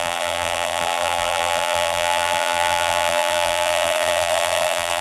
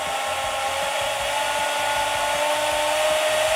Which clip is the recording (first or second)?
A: second